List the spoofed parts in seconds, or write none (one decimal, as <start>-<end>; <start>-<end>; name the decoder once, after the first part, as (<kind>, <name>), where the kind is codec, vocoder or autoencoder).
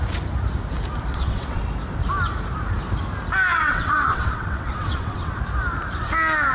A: 1.1-1.6 (vocoder, WaveNeXt); 3.5-5.4